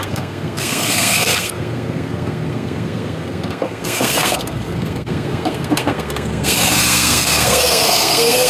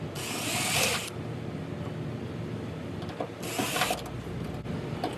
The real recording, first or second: second